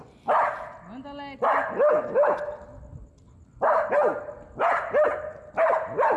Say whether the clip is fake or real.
real